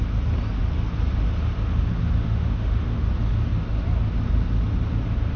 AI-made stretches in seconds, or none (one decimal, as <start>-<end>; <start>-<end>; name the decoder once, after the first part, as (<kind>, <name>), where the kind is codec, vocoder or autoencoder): 2.0-3.1 (autoencoder, DAC-VAE)